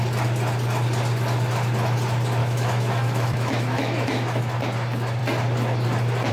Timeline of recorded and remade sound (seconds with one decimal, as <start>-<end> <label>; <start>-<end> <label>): 0.0-2.4 recorded; 2.4-4.4 remade; 4.4-6.3 recorded